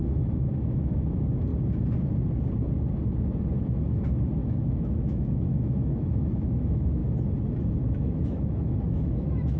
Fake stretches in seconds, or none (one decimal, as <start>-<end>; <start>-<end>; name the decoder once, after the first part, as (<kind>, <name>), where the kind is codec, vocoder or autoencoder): 0.0-1.5 (autoencoder, DAC-VAE); 3.6-7.0; 7.9-9.6